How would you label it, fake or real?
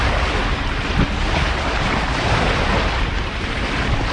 real